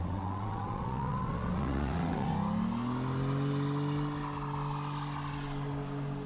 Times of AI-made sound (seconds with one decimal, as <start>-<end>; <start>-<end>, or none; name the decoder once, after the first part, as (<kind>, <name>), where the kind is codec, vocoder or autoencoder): 0.0-2.3 (vocoder, WaveNeXt)